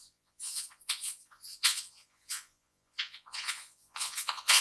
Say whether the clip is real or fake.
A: fake